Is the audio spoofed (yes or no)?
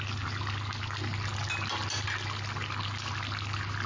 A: no